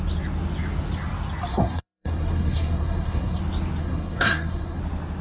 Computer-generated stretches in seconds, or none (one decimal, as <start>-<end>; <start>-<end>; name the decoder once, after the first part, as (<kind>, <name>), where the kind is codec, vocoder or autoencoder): 1.5-3.4 (codec, SNAC); 3.8-4.8